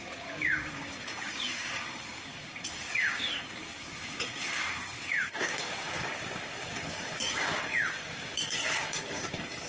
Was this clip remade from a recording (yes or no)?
yes